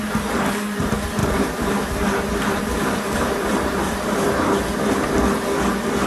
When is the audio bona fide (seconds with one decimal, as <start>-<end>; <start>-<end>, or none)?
0.0-1.2; 4.9-6.1